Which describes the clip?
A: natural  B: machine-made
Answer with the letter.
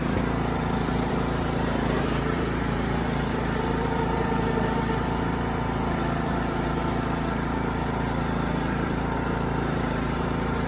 B